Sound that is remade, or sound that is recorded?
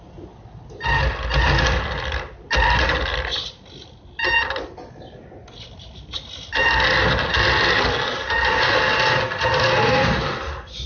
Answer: recorded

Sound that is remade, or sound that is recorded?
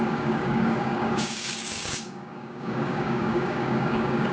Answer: remade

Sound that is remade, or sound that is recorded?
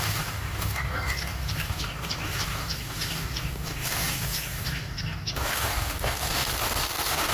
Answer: remade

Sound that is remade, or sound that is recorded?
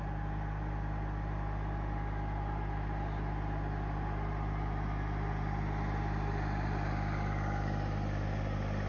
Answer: recorded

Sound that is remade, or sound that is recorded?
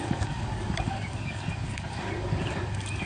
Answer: remade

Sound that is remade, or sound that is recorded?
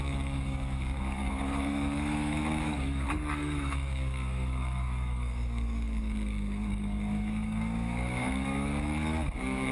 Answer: remade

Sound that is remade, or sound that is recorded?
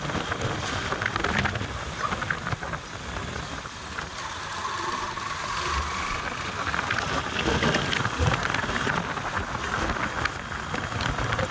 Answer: recorded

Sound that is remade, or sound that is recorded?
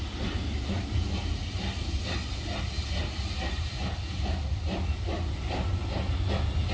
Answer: recorded